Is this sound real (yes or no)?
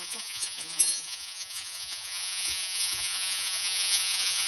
no